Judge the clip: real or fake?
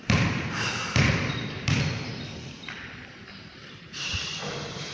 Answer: fake